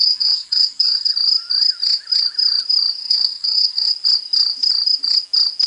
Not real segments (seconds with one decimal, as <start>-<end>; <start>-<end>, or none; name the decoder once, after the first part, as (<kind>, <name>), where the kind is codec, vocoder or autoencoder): 0.0-1.1 (codec, SNAC); 3.0-3.9